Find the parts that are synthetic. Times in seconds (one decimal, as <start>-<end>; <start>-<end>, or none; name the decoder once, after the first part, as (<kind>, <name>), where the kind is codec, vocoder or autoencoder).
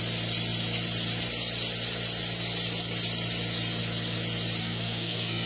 4.6-5.5 (codec, SNAC)